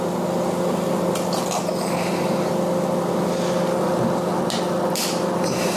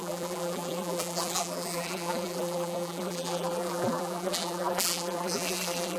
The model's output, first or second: second